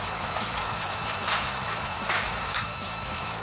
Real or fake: fake